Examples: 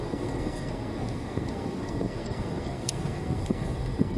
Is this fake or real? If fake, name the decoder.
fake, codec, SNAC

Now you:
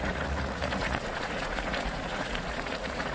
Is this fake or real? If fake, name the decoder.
fake, vocoder, Vocos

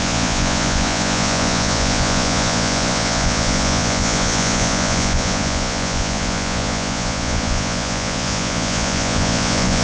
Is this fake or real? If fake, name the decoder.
fake, vocoder, Vocos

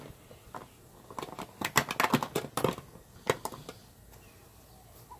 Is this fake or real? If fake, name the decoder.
real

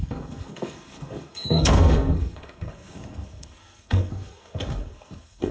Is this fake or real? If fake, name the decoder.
fake, codec, SNAC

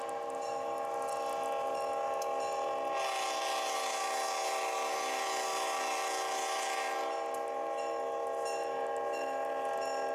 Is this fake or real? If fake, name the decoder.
real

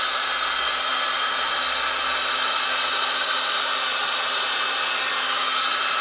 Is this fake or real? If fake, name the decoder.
real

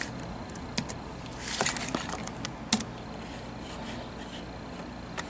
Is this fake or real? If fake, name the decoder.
real